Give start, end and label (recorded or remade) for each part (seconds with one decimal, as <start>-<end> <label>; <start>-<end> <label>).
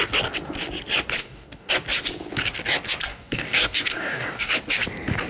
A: 0.0-1.2 recorded; 1.2-1.7 remade; 1.7-3.1 recorded; 3.1-4.5 remade; 4.5-5.3 recorded